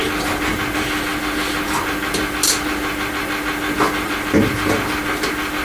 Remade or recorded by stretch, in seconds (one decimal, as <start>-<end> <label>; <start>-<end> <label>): 0.0-5.6 recorded